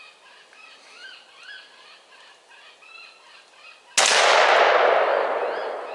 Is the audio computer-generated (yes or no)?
no